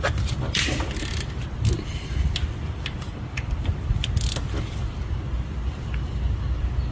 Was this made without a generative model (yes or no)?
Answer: yes